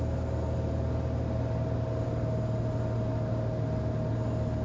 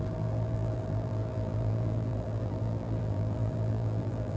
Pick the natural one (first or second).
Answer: first